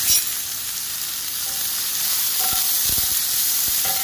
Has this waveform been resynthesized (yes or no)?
no